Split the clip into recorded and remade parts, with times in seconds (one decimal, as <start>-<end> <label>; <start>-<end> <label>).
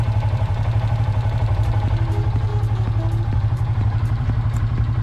0.0-2.5 remade; 2.5-3.2 recorded; 3.2-5.0 remade